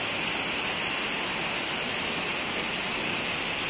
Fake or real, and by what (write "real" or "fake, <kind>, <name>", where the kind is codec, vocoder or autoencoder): real